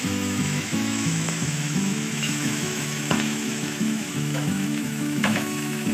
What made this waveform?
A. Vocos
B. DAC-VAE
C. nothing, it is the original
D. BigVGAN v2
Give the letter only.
B